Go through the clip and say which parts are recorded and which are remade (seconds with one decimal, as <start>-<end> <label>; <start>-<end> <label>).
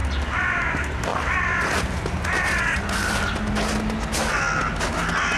0.0-1.1 recorded; 1.1-3.5 remade; 3.5-5.4 recorded